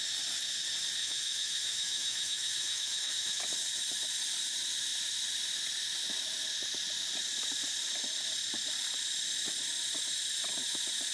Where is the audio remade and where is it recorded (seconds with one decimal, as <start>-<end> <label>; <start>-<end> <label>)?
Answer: 0.0-1.0 recorded; 1.0-3.4 remade; 3.4-11.1 recorded